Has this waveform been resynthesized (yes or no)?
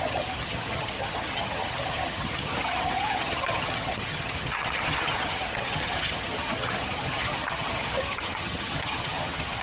yes